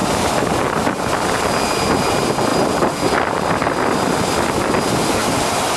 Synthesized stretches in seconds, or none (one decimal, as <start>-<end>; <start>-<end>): none